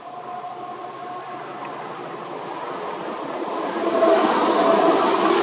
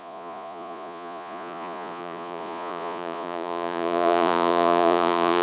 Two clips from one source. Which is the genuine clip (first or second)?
first